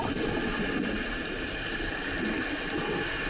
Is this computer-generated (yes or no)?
no